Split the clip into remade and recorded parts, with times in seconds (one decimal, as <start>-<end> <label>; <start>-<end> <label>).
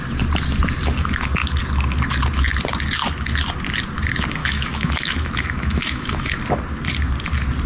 0.0-4.4 recorded; 4.4-6.4 remade; 6.4-7.7 recorded